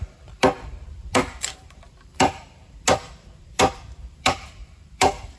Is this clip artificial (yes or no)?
yes